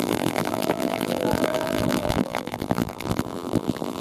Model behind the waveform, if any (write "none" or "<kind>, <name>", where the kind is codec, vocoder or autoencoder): vocoder, BigVGAN v2